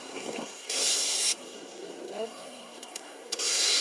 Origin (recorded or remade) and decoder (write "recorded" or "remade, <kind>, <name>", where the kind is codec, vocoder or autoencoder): remade, codec, SNAC